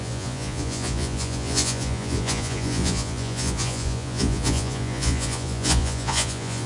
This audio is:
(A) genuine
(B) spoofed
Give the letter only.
B